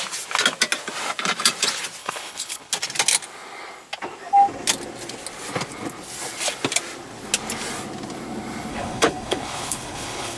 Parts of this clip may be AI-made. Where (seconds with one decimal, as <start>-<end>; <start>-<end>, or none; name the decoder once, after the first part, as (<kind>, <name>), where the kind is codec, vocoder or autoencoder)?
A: 2.0-2.7 (codec, HILCodec); 8.7-10.4